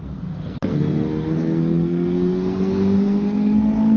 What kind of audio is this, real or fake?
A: fake